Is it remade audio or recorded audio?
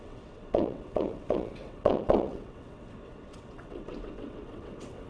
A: remade